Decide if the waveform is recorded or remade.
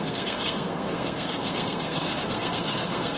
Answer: remade